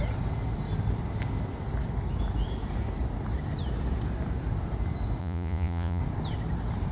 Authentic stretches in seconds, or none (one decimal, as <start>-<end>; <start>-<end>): 0.0-5.2; 6.0-6.9